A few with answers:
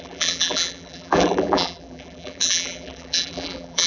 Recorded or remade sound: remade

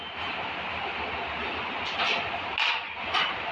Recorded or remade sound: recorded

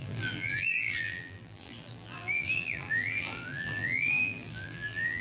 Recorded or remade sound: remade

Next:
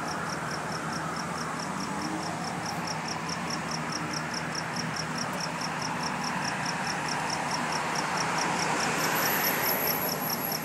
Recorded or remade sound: recorded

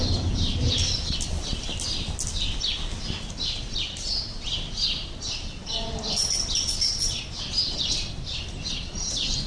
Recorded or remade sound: recorded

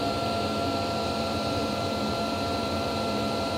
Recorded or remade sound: remade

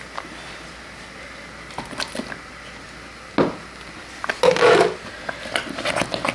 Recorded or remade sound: recorded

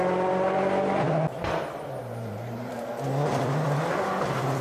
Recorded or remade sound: recorded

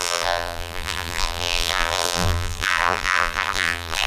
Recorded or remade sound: remade